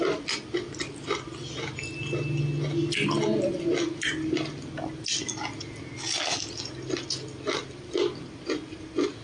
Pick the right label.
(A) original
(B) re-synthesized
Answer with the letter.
A